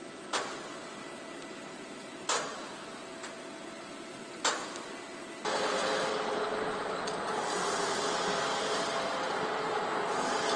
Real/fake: real